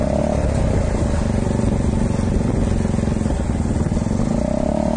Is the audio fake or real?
real